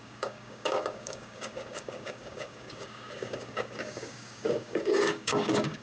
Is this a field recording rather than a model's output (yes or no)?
no